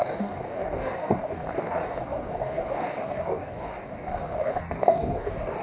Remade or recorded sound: remade